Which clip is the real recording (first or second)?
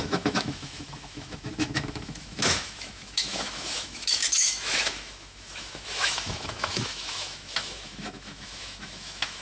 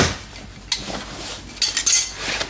second